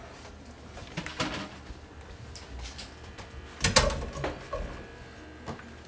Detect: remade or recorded recorded